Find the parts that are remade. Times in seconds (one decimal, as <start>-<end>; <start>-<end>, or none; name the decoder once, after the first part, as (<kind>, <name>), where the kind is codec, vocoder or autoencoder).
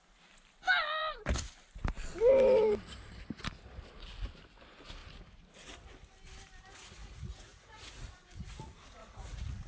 6.7-8.1 (vocoder, Vocos); 9.0-9.7